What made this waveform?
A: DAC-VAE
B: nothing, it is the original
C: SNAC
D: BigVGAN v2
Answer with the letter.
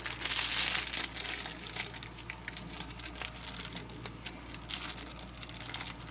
B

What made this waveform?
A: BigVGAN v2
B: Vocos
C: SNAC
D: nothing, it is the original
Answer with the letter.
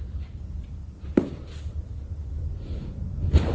D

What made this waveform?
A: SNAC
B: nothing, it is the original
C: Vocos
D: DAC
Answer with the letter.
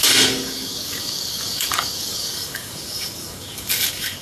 D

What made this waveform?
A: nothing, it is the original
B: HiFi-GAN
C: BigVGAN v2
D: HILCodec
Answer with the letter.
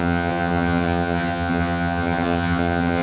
B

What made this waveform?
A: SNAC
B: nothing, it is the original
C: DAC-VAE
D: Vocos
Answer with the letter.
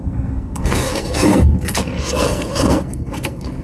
A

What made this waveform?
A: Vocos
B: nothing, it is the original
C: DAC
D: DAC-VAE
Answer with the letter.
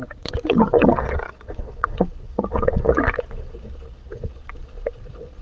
A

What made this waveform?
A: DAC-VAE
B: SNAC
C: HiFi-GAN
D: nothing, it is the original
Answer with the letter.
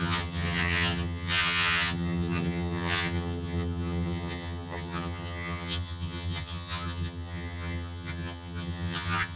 C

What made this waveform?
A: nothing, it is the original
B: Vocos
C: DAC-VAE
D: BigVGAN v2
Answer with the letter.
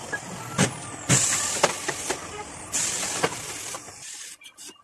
D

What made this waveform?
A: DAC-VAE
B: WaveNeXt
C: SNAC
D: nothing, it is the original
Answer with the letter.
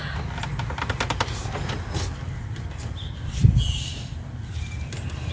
D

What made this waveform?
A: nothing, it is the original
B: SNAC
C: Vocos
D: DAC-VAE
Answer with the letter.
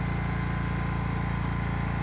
A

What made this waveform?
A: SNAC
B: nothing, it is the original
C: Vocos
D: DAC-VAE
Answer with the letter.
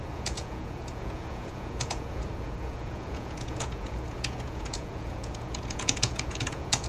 C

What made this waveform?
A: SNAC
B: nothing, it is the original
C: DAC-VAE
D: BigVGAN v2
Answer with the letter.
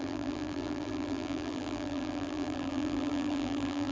D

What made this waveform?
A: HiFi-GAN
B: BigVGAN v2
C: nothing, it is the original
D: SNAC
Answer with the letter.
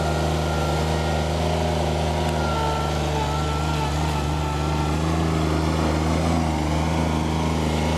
C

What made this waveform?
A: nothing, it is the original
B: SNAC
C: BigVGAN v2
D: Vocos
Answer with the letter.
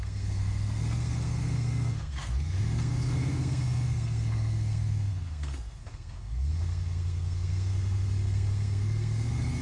B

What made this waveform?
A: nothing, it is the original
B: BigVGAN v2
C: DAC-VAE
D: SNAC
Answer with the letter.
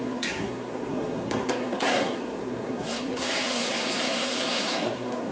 D